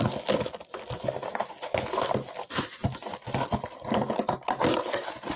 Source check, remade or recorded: recorded